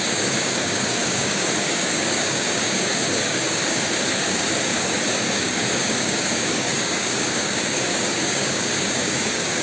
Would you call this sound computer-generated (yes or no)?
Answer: yes